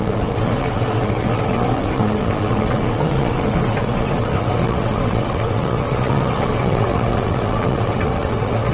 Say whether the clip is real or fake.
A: fake